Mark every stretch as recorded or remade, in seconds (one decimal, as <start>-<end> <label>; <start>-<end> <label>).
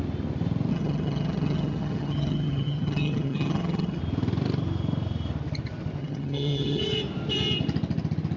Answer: 0.0-0.7 recorded; 0.7-4.0 remade; 4.0-6.0 recorded; 6.0-6.8 remade; 6.8-8.4 recorded